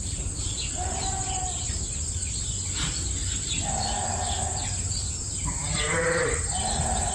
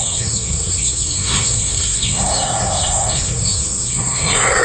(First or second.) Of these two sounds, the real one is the first